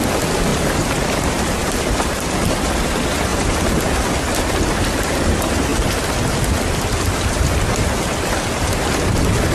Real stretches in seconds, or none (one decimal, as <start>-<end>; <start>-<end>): 0.0-0.5; 2.2-3.3; 3.8-9.5